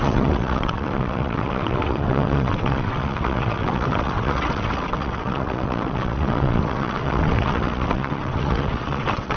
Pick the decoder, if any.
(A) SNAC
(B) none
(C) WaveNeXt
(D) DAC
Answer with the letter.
C